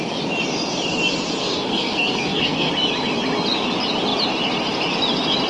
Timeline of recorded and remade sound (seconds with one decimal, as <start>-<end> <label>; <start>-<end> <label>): 0.0-1.4 recorded; 1.4-2.7 remade; 2.7-5.5 recorded